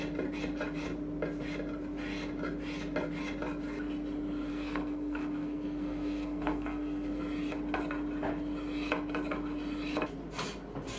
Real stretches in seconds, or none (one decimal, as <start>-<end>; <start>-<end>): 0.0-4.5; 7.2-11.0